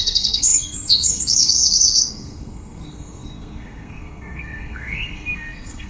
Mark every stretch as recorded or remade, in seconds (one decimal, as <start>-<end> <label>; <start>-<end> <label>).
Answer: 0.0-5.9 remade